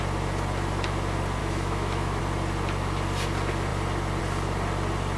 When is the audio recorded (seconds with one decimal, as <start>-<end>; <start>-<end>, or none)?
0.0-1.4; 2.2-5.2